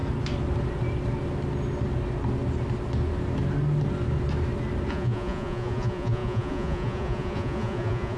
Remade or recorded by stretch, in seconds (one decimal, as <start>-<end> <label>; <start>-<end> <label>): 0.0-4.9 recorded; 4.9-8.2 remade